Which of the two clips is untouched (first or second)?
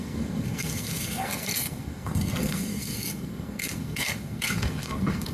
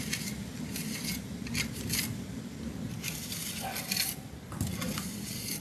second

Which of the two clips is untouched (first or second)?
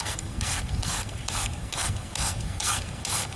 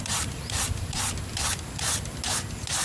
second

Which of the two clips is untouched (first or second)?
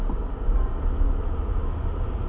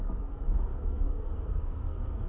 first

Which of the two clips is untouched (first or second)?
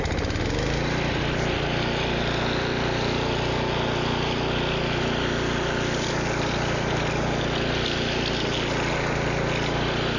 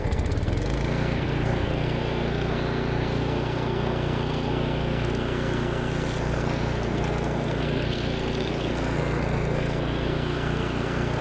first